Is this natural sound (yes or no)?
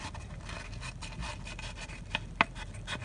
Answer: yes